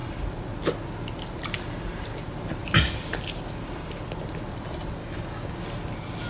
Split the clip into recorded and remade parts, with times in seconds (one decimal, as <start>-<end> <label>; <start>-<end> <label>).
0.0-5.0 recorded; 5.0-5.6 remade; 5.6-6.3 recorded